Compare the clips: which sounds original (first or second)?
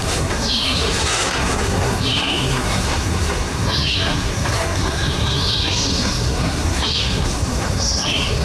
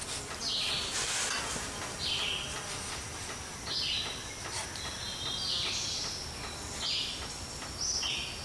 second